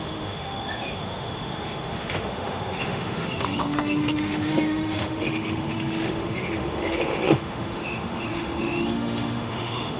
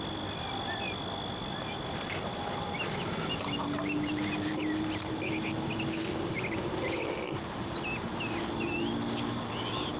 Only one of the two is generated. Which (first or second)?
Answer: first